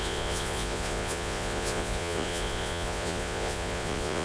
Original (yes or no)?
no